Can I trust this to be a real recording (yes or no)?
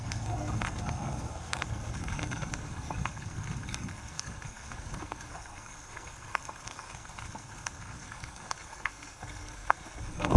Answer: no